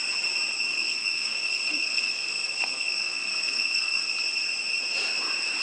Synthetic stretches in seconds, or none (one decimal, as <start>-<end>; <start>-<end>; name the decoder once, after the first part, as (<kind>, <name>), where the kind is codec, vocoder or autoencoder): 0.7-4.1 (codec, SNAC)